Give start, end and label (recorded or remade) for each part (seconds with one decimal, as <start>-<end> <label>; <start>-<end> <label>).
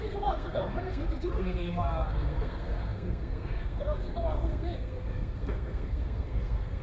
0.0-6.8 remade